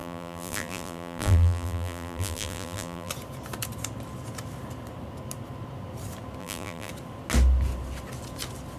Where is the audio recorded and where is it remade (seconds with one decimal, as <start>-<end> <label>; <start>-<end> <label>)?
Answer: 0.0-3.1 remade; 3.1-6.4 recorded; 6.4-6.9 remade; 6.9-8.8 recorded

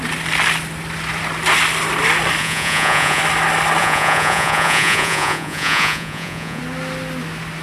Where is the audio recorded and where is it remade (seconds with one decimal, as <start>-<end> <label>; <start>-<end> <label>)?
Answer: 0.0-2.4 recorded; 2.4-3.2 remade; 3.2-3.8 recorded; 3.8-6.6 remade; 6.6-7.6 recorded

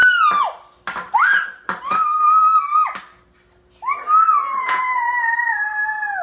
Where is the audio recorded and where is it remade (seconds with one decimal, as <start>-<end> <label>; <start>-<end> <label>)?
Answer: 0.0-4.4 recorded; 4.4-5.1 remade; 5.1-6.2 recorded

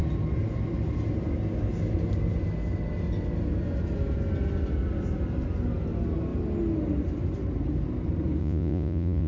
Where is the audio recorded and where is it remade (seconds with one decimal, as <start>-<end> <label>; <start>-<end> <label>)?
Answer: 0.0-8.4 recorded; 8.4-9.3 remade

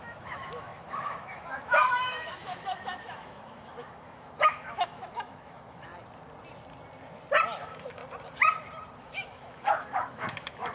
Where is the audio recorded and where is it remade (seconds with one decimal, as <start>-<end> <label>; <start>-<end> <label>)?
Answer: 0.0-5.9 remade; 5.9-7.6 recorded; 7.6-8.0 remade; 8.0-9.0 recorded; 9.0-10.7 remade

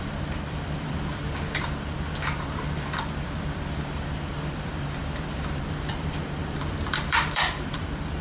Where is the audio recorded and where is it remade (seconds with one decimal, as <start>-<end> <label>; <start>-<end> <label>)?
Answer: 0.0-8.2 remade

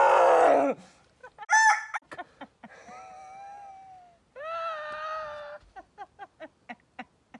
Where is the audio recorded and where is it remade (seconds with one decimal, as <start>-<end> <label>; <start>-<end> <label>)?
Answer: 0.0-7.4 recorded